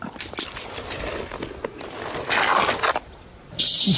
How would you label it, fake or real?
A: real